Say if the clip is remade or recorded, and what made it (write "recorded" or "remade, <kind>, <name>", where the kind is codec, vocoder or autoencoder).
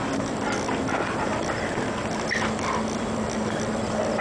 recorded